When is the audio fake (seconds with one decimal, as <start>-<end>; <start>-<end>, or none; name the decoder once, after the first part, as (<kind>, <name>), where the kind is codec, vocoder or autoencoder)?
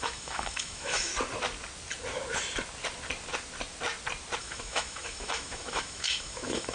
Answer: 0.0-1.1 (autoencoder, DAC-VAE); 4.4-6.7